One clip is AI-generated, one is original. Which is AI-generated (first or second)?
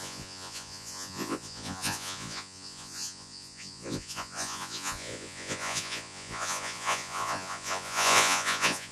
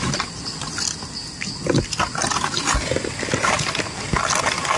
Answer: first